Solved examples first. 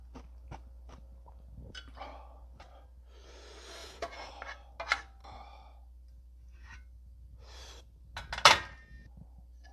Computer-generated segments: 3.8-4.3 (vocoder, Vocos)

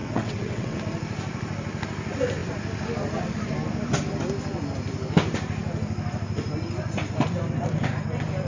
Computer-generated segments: 0.0-0.8 (vocoder, WaveNeXt)

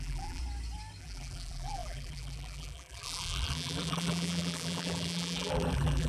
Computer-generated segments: 0.0-0.4 (vocoder, BigVGAN v2); 1.0-6.1

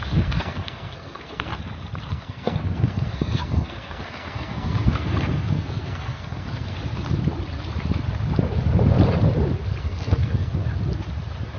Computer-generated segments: 0.0-1.5 (codec, SNAC); 2.0-6.8; 9.8-10.6